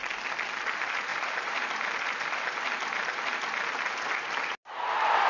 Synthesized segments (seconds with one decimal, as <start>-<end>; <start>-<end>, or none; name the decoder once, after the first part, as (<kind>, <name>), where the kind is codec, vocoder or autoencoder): 1.1-1.7 (vocoder, BigVGAN v2)